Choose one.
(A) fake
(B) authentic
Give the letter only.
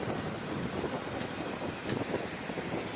B